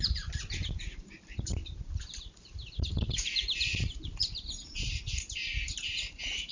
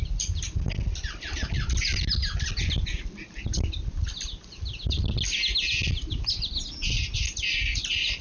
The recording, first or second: second